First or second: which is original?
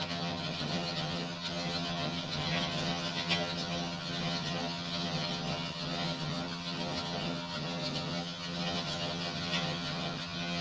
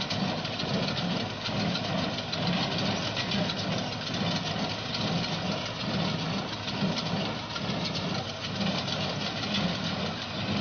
second